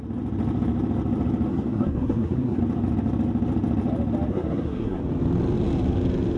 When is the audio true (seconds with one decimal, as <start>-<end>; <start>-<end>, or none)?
0.0-1.5; 2.6-4.3; 5.0-6.4